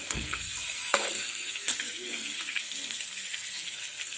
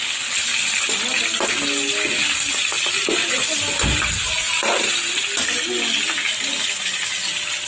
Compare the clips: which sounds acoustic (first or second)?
second